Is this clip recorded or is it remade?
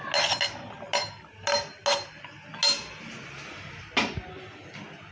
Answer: recorded